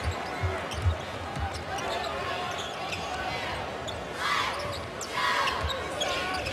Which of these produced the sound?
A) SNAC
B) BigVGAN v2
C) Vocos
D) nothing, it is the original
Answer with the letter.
D